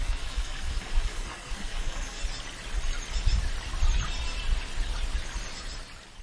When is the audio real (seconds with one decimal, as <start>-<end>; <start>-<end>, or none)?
2.2-6.2